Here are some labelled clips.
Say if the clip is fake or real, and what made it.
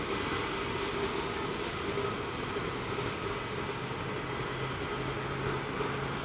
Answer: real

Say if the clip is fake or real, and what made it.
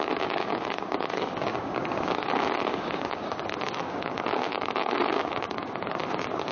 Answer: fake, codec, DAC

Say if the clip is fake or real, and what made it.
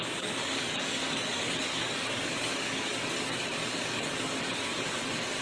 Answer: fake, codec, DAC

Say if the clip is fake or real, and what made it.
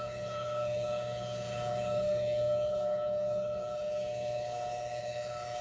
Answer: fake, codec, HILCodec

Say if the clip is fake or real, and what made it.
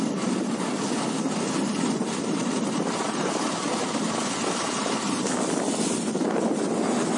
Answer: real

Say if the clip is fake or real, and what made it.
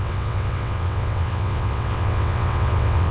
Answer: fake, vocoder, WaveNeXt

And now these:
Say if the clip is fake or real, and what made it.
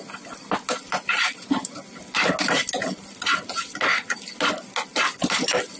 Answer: real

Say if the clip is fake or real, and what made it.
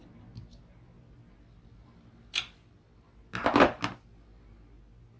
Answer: real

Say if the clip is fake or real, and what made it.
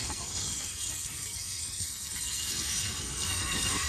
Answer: fake, codec, SNAC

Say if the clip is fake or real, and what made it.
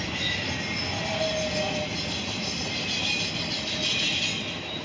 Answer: real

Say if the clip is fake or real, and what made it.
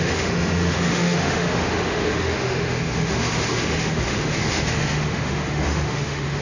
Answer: fake, autoencoder, DAC-VAE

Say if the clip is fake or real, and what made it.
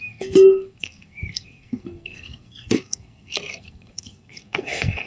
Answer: fake, codec, SNAC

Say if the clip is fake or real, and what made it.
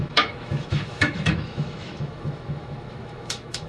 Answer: fake, autoencoder, DAC-VAE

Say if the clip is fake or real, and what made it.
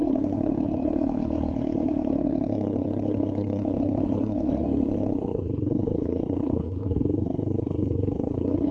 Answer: fake, codec, SNAC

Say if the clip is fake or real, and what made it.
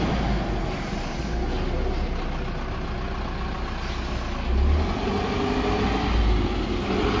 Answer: real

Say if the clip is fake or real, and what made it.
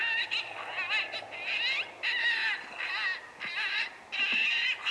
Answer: real